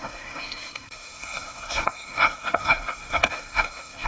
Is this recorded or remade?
remade